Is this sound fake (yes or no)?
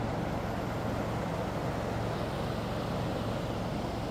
no